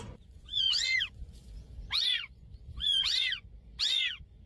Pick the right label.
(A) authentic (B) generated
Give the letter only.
B